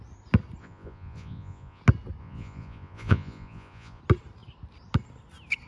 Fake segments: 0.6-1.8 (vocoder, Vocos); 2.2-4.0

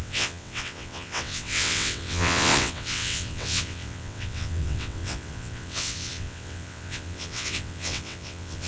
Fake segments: 0.0-8.7 (vocoder, WaveNeXt)

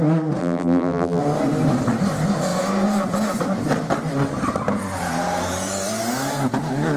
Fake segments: 0.4-1.2 (vocoder, BigVGAN v2)

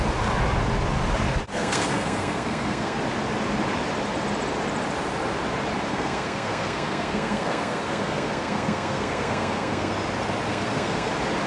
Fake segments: 1.5-3.0 (codec, SNAC); 5.9-9.9; 10.5-11.1

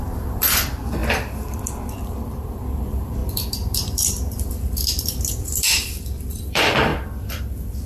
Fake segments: 0.0-7.9 (vocoder, BigVGAN v2)